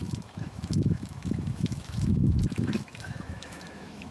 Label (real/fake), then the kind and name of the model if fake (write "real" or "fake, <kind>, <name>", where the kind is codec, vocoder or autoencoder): fake, autoencoder, DAC-VAE